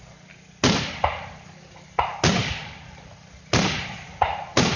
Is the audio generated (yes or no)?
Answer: no